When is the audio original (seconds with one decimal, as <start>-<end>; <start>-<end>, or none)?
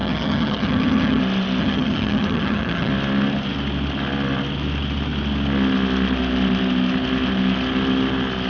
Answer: 1.2-1.6; 2.9-8.5